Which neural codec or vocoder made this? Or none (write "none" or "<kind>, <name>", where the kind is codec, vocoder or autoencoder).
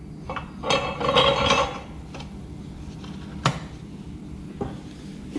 none